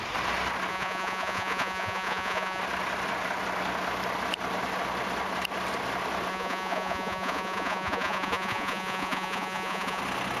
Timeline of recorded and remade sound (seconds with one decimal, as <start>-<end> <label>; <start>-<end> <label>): 0.0-0.7 recorded; 0.7-2.6 remade; 2.6-6.3 recorded; 6.3-10.0 remade; 10.0-10.4 recorded